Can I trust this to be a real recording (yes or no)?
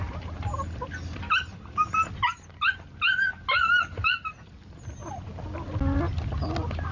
yes